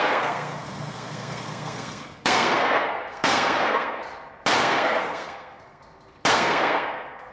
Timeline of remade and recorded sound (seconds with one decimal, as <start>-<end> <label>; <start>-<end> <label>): 0.0-4.0 remade; 4.0-4.6 recorded; 4.6-5.8 remade; 5.8-6.3 recorded; 6.3-7.3 remade

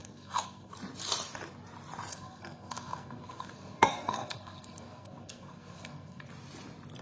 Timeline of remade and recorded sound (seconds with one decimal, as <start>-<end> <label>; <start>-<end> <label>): 0.0-0.7 remade; 0.7-2.1 recorded; 2.1-6.3 remade; 6.3-7.0 recorded

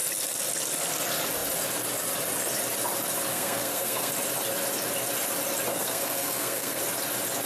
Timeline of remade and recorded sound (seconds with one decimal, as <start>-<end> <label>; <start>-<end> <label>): 0.0-3.3 recorded; 3.3-4.1 remade; 4.1-5.7 recorded; 5.7-6.8 remade; 6.8-7.5 recorded

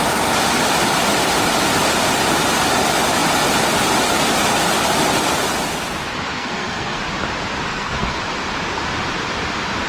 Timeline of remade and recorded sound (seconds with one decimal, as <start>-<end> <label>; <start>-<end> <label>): 0.0-6.3 recorded; 6.3-7.0 remade; 7.0-7.7 recorded; 7.7-8.2 remade; 8.2-9.9 recorded

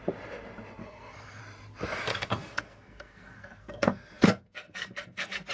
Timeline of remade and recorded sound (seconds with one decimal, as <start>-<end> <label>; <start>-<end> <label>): 0.0-0.8 recorded; 0.8-1.4 remade; 1.4-2.1 recorded; 2.1-5.5 remade